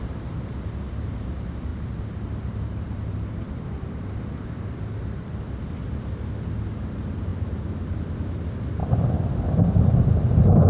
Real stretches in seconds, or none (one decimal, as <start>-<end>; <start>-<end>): 0.0-1.7; 5.4-10.7